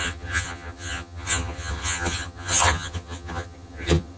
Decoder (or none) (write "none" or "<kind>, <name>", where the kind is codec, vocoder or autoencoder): vocoder, HiFi-GAN